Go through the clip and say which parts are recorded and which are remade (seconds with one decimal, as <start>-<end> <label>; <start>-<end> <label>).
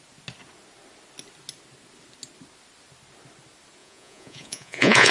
0.0-3.8 recorded; 3.8-5.1 remade